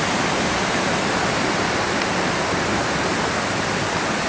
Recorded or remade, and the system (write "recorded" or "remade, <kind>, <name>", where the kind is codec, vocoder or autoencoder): recorded